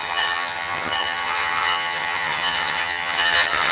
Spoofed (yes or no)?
yes